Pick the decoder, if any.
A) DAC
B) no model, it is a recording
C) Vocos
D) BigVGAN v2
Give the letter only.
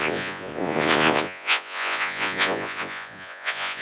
C